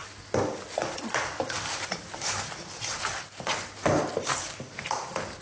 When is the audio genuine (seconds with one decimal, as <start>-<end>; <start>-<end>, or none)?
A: 0.0-5.4